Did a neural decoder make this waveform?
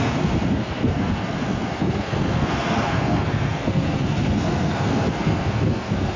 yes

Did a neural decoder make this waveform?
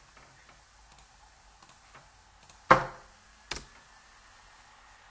no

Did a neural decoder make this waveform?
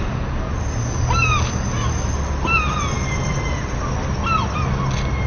no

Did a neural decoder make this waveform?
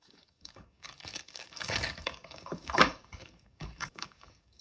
yes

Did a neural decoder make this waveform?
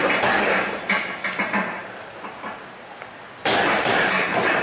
no